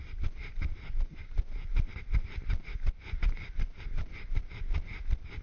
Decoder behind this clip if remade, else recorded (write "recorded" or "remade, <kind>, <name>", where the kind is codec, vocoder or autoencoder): recorded